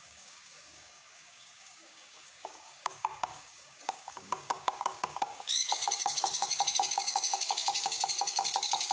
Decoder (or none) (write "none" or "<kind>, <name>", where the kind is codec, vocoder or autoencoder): codec, DAC